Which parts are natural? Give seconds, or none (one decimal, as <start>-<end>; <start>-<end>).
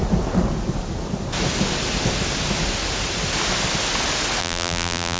0.0-4.4